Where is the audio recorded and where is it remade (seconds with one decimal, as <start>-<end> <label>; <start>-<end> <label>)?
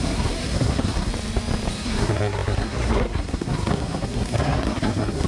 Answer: 0.0-1.1 remade; 1.1-1.7 recorded; 1.7-5.3 remade